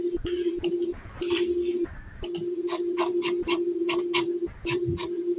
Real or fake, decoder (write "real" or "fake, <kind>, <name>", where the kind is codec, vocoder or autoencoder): fake, vocoder, BigVGAN v2